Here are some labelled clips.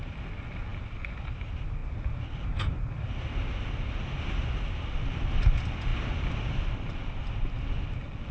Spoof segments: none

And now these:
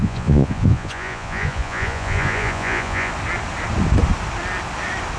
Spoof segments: 0.0-3.1 (vocoder, Vocos)

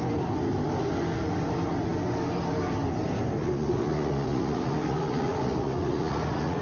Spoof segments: 3.4-6.6 (vocoder, Vocos)

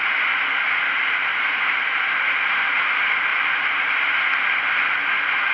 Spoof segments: 3.3-4.1 (vocoder, BigVGAN v2)